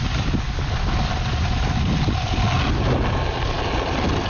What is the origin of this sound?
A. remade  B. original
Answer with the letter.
B